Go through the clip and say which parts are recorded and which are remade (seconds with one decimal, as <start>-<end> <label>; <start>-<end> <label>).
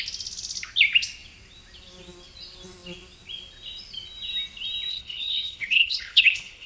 0.0-4.9 recorded; 4.9-6.7 remade